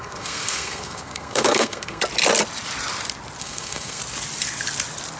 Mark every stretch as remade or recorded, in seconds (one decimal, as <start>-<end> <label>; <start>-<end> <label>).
0.0-2.0 remade; 2.0-3.4 recorded; 3.4-4.0 remade; 4.0-5.2 recorded